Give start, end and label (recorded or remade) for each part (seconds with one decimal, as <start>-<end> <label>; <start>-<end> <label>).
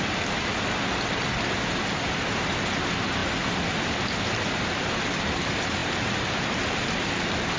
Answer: 0.0-7.6 recorded